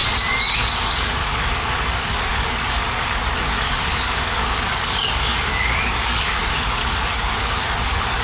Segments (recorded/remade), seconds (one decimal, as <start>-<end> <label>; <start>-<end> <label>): 0.0-1.0 recorded; 1.0-8.2 remade